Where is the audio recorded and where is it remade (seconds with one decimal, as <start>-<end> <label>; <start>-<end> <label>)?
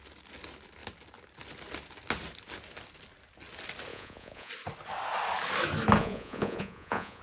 0.0-3.9 recorded; 3.9-4.5 remade; 4.5-6.0 recorded; 6.0-7.2 remade